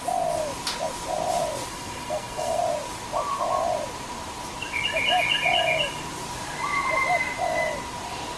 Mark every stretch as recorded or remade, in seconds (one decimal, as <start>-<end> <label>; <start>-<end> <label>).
0.0-1.7 recorded; 1.7-2.6 remade; 2.6-8.4 recorded